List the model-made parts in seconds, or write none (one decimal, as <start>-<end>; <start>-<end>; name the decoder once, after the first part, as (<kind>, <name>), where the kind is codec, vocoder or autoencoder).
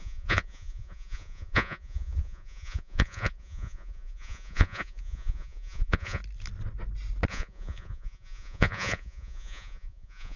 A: 0.0-6.2 (vocoder, Vocos); 7.3-10.4